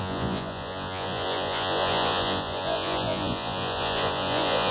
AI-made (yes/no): yes